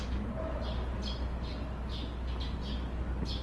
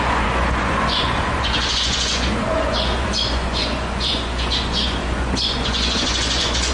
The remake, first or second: second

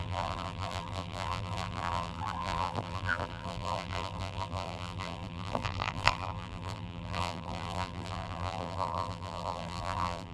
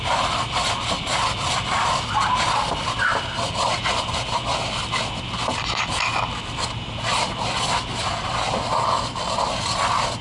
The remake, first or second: first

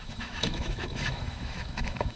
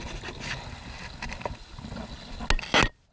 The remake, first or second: first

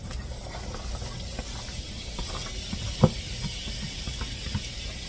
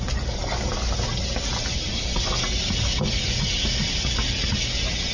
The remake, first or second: first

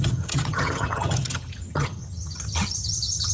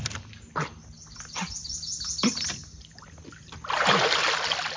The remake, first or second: first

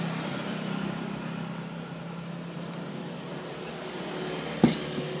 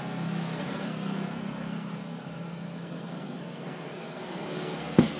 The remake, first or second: second